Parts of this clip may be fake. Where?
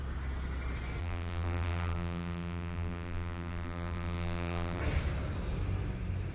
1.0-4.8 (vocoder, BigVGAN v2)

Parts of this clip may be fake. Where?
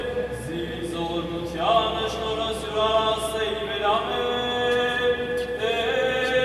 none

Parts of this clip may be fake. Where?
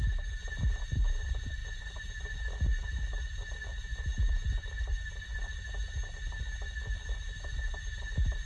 none